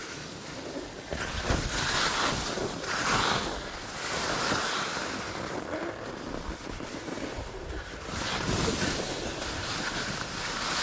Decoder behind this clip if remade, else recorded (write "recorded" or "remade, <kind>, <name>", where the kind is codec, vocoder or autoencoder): recorded